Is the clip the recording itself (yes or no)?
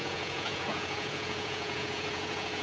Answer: no